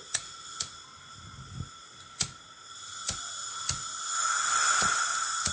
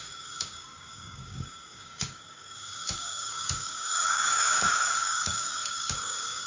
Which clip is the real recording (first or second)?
first